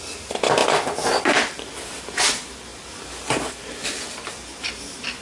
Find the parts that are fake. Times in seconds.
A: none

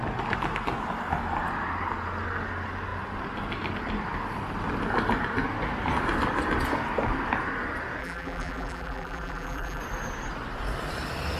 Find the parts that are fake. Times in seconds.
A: 8.0-9.8 (vocoder, BigVGAN v2)

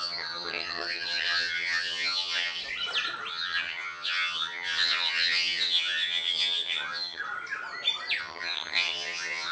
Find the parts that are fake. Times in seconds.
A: 0.0-2.6 (vocoder, HiFi-GAN); 3.3-7.2; 8.2-9.5